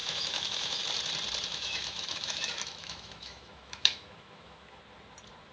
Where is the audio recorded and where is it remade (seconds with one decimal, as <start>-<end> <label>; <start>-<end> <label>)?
0.0-0.8 remade; 0.8-1.5 recorded; 1.5-4.8 remade; 4.8-5.5 recorded